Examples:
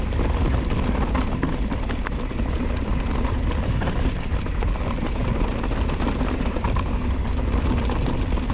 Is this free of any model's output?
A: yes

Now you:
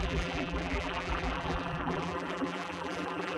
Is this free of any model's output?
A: no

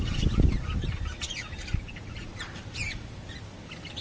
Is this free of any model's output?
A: yes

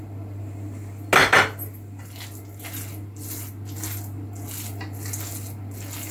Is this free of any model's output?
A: yes